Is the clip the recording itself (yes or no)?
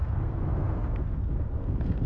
no